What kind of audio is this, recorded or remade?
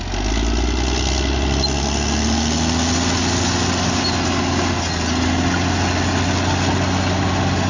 recorded